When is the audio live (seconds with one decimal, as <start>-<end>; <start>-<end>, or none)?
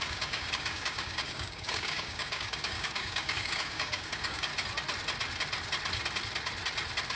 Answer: 4.5-7.2